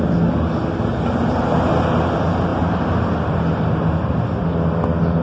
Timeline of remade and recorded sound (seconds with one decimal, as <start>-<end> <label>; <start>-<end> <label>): 0.0-0.9 recorded; 0.9-1.4 remade; 1.4-2.5 recorded; 2.5-3.7 remade; 3.7-5.2 recorded

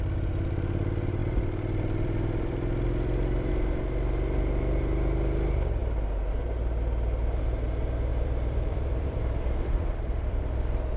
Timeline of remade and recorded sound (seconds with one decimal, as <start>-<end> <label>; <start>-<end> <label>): 0.0-1.2 recorded; 1.2-3.5 remade; 3.5-8.1 recorded; 8.1-10.4 remade; 10.4-11.0 recorded

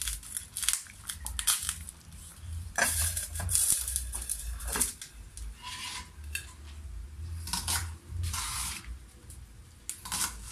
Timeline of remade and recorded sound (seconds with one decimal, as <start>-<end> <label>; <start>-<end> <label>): 0.0-2.3 recorded; 2.3-4.9 remade; 4.9-7.8 recorded; 7.8-8.8 remade; 8.8-10.5 recorded

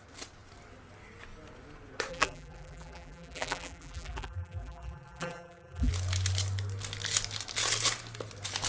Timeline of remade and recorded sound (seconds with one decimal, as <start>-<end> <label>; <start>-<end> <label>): 0.0-2.1 recorded; 2.1-5.9 remade; 5.9-8.7 recorded

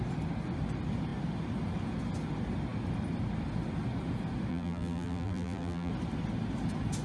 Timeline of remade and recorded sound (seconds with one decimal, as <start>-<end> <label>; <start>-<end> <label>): 0.0-4.5 recorded; 4.5-5.9 remade; 5.9-7.0 recorded